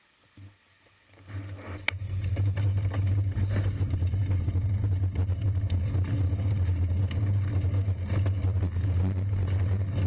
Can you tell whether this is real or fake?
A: real